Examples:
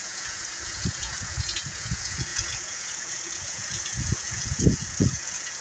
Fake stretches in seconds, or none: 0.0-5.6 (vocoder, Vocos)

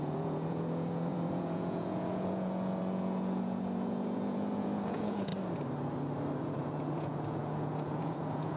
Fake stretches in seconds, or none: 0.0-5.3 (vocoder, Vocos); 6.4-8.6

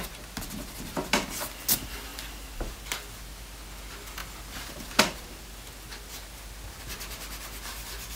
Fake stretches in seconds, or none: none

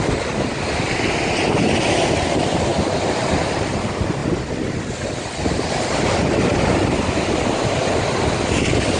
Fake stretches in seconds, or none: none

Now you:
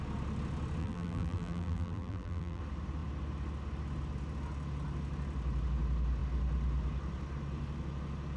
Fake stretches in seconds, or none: 0.8-2.6 (vocoder, BigVGAN v2)

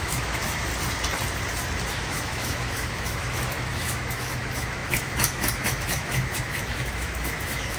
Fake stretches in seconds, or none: 0.0-0.7 (autoencoder, DAC-VAE); 1.9-7.8

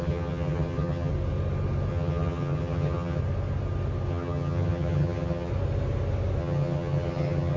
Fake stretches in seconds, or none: 0.0-1.1 (vocoder, HiFi-GAN); 1.9-3.2; 4.1-5.5; 6.4-7.6

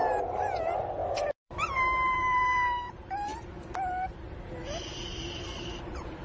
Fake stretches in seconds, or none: 0.0-3.3 (vocoder, BigVGAN v2); 5.8-6.2